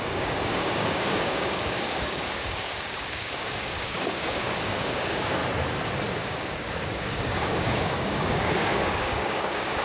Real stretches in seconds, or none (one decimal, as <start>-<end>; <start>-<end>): 5.4-6.1